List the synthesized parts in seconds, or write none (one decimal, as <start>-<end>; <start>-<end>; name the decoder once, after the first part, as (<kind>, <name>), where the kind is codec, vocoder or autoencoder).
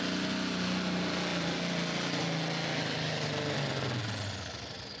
2.7-3.3 (codec, DAC)